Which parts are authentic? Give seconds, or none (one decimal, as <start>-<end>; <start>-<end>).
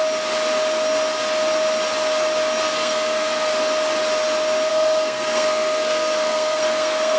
0.0-2.6; 3.5-4.7